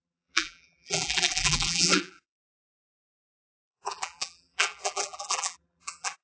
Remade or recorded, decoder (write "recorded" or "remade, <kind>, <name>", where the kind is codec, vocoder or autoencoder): remade, vocoder, BigVGAN v2